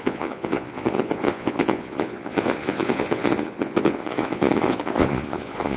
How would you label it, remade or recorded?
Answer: remade